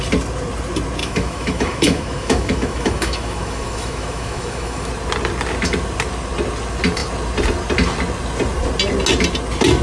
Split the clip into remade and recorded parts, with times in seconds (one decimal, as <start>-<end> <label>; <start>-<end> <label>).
0.0-1.0 recorded; 1.0-4.9 remade; 4.9-9.8 recorded